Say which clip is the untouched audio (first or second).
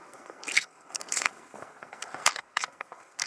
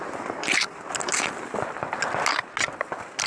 second